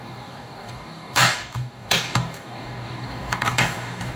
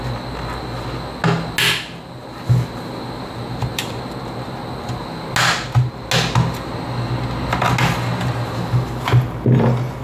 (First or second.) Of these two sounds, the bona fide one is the second